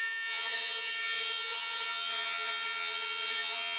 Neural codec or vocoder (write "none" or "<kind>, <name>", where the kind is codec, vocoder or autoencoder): vocoder, HiFi-GAN